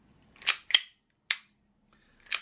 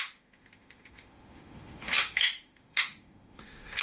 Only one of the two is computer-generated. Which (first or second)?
second